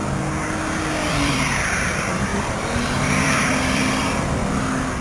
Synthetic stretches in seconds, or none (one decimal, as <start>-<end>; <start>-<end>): 1.1-4.4